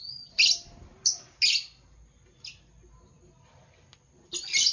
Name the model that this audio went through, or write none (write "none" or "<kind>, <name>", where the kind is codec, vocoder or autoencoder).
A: none